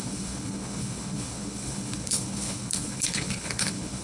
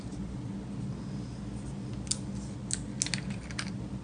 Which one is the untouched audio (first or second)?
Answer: second